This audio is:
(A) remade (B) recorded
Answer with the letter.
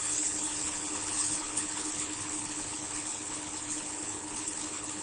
A